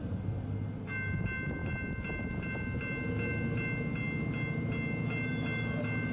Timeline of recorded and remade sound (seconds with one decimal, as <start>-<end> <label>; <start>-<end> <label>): 0.0-6.1 recorded